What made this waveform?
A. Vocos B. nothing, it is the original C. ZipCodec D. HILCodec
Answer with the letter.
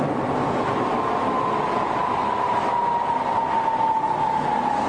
B